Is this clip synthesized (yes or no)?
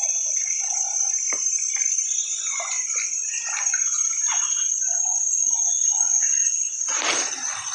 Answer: no